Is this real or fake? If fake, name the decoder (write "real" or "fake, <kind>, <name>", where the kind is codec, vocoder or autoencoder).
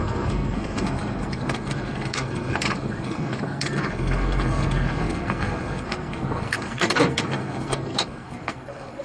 fake, codec, SNAC